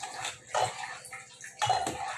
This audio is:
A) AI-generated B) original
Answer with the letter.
B